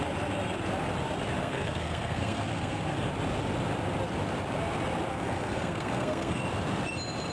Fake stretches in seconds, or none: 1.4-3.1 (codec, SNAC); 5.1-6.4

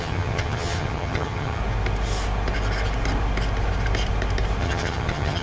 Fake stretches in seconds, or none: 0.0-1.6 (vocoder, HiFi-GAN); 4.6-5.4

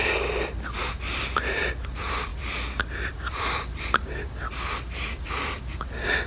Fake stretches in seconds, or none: 0.0-6.3 (vocoder, BigVGAN v2)

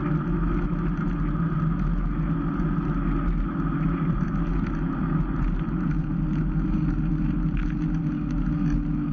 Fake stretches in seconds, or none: none

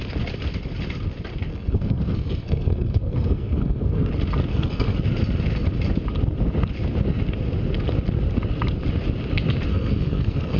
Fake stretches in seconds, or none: 1.5-4.1 (codec, SNAC); 4.5-5.0; 9.7-10.6

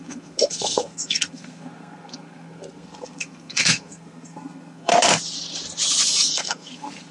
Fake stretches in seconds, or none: 0.0-4.9 (codec, SNAC); 6.3-7.1